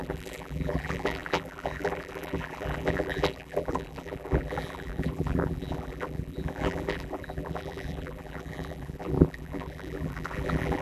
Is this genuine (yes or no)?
no